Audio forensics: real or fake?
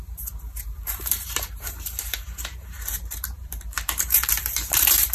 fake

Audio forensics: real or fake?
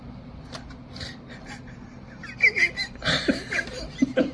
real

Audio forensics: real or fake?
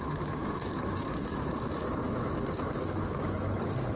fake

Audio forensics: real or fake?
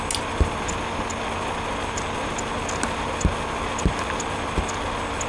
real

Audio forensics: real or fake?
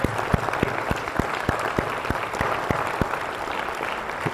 real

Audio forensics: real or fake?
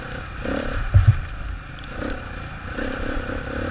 real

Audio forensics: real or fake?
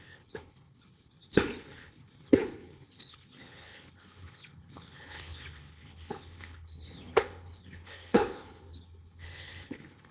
fake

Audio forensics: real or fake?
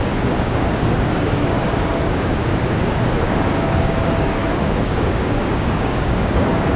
fake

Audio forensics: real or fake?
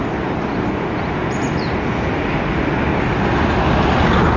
real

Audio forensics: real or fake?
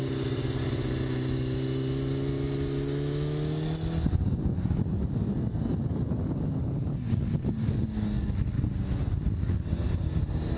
real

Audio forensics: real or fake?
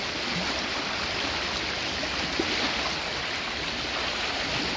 real